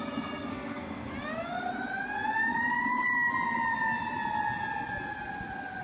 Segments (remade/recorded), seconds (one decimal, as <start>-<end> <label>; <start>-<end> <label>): 0.0-0.5 recorded; 0.5-1.1 remade; 1.1-5.8 recorded